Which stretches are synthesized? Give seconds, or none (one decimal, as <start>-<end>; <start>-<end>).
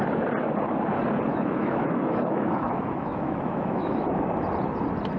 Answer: 1.3-4.3